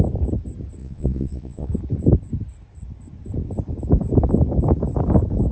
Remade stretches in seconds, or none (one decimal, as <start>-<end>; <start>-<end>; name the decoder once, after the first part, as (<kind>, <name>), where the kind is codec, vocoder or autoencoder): 0.8-1.7 (vocoder, Vocos)